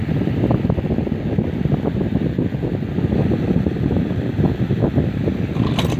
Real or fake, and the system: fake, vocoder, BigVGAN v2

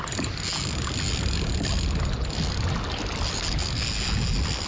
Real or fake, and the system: real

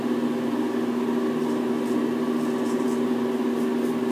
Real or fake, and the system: real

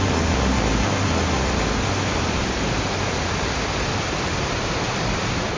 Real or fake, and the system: real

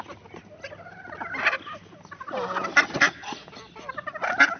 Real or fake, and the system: real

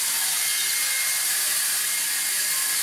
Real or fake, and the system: real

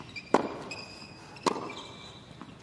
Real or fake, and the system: real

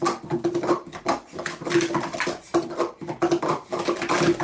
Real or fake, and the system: real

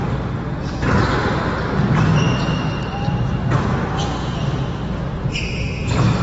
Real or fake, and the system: real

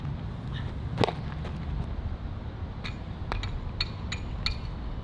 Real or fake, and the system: real